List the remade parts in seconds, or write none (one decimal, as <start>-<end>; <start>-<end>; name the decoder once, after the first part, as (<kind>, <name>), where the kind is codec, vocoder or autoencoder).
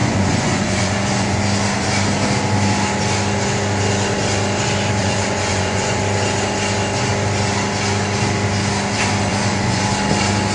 0.0-1.4 (vocoder, Vocos); 5.0-6.0; 9.3-9.8